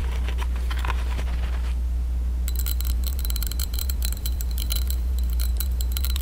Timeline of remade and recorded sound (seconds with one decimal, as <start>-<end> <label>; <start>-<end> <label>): 0.0-2.9 recorded; 2.9-6.2 remade